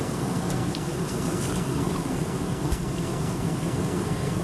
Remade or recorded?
remade